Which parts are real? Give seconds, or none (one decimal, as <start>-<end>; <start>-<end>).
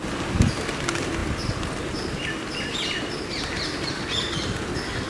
0.0-5.1